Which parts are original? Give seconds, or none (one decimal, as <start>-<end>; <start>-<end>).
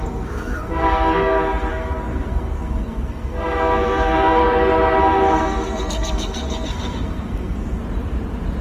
4.4-5.0; 7.8-8.6